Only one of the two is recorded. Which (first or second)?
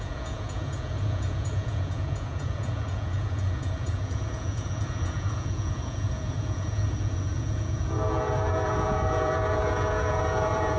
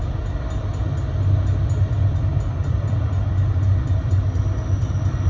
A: second